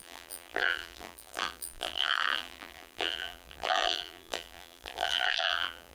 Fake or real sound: fake